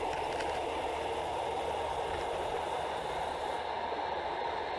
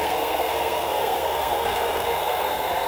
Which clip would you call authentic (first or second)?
first